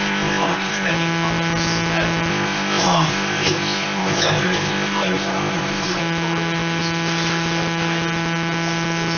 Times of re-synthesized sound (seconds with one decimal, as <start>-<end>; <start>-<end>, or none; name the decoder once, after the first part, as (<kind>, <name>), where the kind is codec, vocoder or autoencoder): 0.0-0.9 (codec, ZipCodec); 2.3-6.0